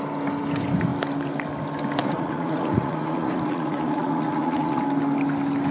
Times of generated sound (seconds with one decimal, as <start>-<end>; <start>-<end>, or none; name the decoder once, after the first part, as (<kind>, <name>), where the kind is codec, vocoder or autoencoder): 2.0-4.8 (vocoder, Vocos)